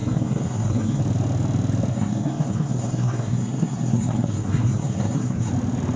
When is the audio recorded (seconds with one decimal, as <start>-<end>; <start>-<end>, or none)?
1.0-1.9; 5.5-6.0